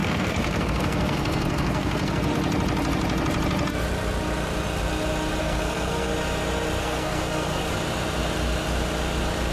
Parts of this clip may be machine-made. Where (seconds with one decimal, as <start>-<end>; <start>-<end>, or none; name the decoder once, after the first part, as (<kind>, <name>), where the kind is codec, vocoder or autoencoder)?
0.0-2.3 (codec, SNAC); 5.4-6.1; 6.8-7.7